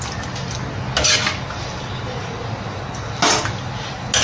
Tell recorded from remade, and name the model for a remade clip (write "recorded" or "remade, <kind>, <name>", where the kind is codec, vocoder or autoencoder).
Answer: recorded